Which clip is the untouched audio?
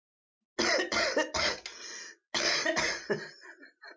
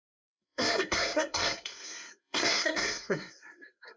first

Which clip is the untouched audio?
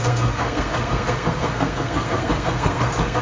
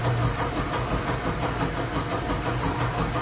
second